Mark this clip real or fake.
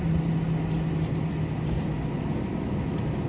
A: real